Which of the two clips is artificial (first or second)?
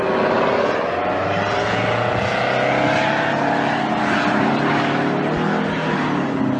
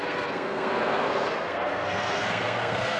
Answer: second